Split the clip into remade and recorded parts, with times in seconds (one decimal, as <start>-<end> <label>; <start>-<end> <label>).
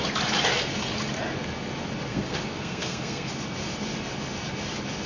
0.0-2.1 recorded; 2.1-3.3 remade; 3.3-5.1 recorded